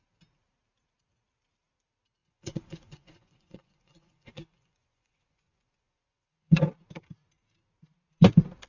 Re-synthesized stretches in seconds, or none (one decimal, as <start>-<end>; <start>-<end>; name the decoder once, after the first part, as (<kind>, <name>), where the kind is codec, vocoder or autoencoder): 2.2-6.6 (vocoder, Vocos)